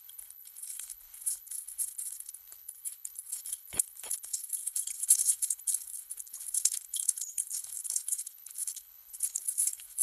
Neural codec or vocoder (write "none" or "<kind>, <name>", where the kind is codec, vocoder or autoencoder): codec, HILCodec